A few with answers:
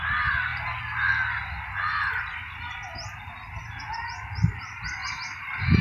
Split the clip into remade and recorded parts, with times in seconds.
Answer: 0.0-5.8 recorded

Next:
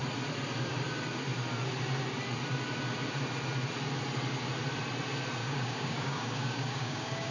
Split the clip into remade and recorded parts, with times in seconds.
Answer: 0.0-5.4 recorded; 5.4-7.3 remade

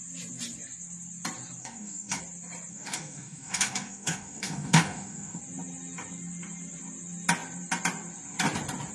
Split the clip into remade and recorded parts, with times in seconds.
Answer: 0.0-1.6 recorded; 1.6-2.2 remade; 2.2-2.7 recorded; 2.7-5.4 remade; 5.4-8.9 recorded

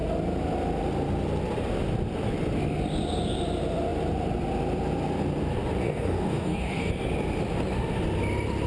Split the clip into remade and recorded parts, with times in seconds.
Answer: 0.0-5.8 recorded; 5.8-6.9 remade; 6.9-8.7 recorded

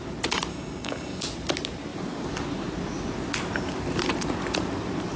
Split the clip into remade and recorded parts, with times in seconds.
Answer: 0.0-0.5 recorded; 0.5-1.2 remade; 1.2-5.2 recorded